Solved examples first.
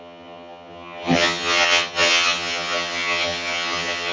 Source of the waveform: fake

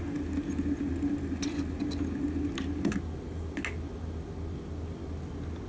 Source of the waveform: real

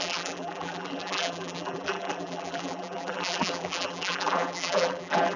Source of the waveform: fake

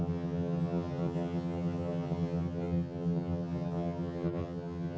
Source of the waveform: fake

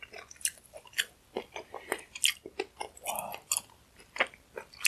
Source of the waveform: real